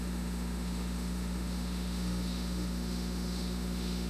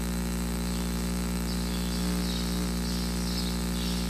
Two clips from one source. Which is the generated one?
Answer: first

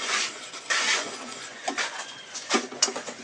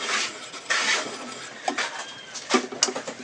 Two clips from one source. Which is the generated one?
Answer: first